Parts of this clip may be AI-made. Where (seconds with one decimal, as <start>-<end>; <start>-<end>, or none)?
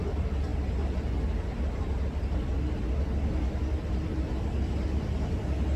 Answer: none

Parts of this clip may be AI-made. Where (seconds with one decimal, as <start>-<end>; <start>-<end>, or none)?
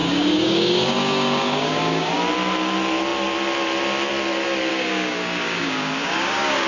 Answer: 0.0-2.1; 4.7-6.7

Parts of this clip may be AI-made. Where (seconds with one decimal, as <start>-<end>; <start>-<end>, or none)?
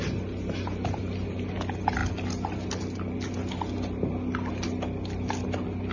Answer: none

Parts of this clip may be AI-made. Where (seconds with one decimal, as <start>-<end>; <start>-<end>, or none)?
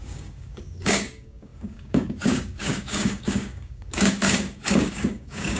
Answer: 0.0-5.6